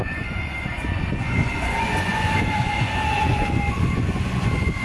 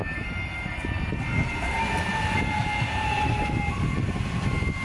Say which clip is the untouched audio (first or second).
second